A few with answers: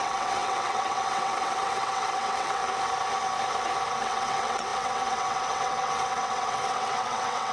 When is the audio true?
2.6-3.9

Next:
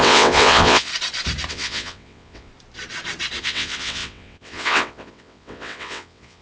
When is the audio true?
0.9-1.5; 2.5-3.4

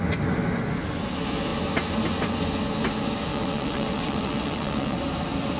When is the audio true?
0.0-3.3; 5.0-5.6

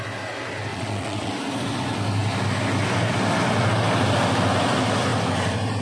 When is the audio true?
0.0-0.7; 1.3-5.8

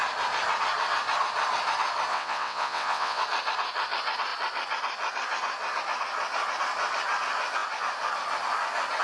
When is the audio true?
0.0-2.1; 3.2-9.0

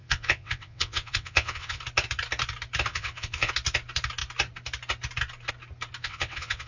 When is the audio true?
1.8-2.9; 3.5-6.0